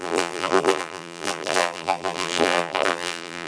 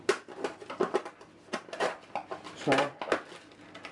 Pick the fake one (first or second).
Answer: first